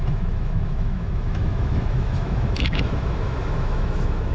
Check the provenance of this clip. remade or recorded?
remade